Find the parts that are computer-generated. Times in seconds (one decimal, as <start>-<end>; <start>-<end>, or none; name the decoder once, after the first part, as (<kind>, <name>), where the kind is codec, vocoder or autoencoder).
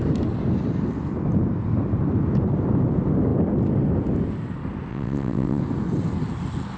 4.9-5.6 (vocoder, WaveNeXt)